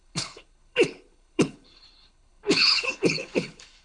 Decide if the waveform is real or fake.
fake